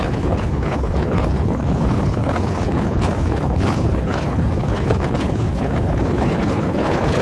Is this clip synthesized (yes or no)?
yes